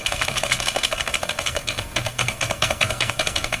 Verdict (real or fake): fake